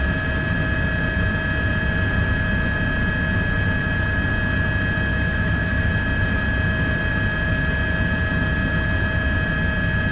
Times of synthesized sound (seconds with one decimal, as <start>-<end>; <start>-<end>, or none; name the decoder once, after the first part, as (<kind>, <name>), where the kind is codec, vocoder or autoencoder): 5.1-5.9 (autoencoder, DAC-VAE)